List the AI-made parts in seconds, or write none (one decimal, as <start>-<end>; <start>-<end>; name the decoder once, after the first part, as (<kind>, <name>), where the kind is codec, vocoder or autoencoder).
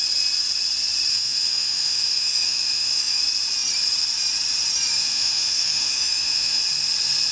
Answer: 1.1-3.2 (autoencoder, DAC-VAE); 5.0-6.6